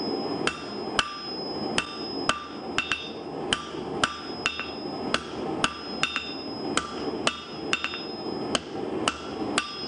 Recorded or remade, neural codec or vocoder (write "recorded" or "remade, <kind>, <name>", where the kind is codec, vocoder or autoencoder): recorded